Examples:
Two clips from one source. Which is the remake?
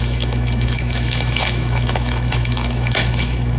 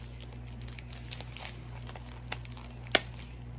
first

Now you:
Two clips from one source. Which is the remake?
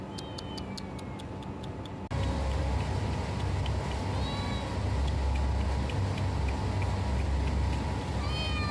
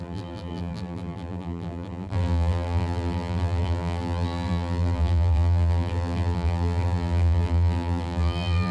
second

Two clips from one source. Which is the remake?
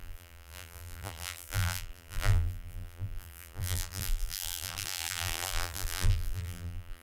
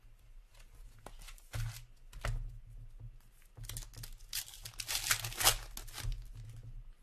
first